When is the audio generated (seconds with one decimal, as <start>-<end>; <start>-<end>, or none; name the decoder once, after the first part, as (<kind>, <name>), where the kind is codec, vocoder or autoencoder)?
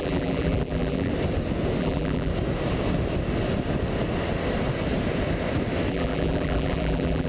0.0-1.1 (vocoder, BigVGAN v2); 1.8-2.3; 5.9-7.3